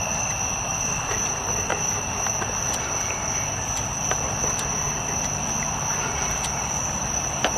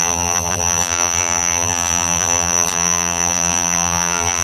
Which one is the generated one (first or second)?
second